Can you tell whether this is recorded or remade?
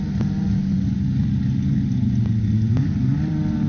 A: recorded